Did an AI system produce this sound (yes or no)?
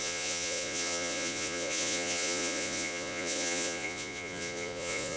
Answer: yes